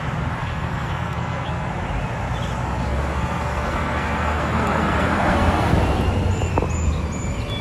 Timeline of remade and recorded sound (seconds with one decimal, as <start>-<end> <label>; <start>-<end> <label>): 0.0-0.4 recorded; 0.4-1.7 remade; 1.7-2.6 recorded; 2.6-5.7 remade; 5.7-7.6 recorded